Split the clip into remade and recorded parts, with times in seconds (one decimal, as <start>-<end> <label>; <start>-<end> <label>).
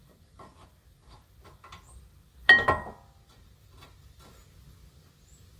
0.0-5.6 recorded